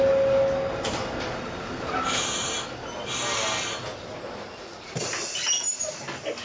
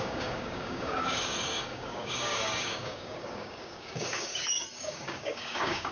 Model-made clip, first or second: second